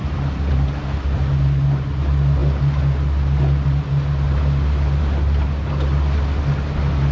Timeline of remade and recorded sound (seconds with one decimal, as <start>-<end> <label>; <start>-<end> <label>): 0.0-7.1 recorded